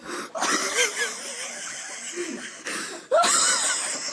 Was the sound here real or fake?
real